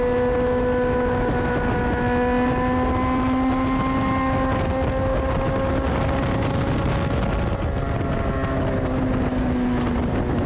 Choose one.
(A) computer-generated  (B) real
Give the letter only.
B